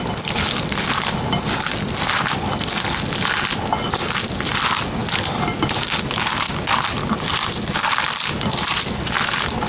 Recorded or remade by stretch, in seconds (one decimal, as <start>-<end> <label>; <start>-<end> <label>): 0.0-9.7 recorded